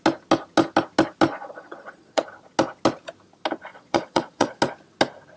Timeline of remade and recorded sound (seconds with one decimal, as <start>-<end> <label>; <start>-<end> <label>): 0.0-1.3 recorded; 1.3-2.3 remade; 2.3-3.7 recorded; 3.7-4.6 remade; 4.6-5.4 recorded